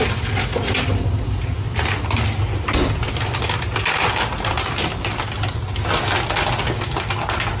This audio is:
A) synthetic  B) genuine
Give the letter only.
B